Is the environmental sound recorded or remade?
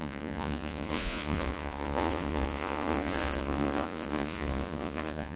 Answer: remade